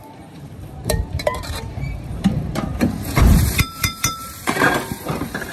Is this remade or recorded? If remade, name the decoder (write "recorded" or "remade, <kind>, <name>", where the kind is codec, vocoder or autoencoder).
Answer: remade, vocoder, BigVGAN v2